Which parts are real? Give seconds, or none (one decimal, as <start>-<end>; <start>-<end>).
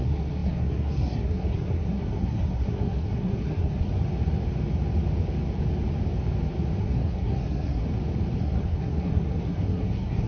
3.9-6.8; 7.8-8.4